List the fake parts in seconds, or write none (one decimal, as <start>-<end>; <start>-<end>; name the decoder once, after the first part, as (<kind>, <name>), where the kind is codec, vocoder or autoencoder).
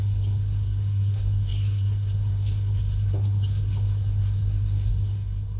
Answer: 0.0-5.6 (codec, SNAC)